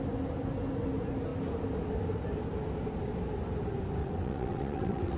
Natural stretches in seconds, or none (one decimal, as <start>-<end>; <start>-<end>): 0.0-4.0